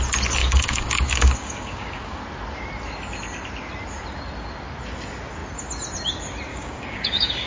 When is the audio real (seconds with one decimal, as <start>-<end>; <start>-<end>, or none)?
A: 0.0-0.4; 2.2-6.5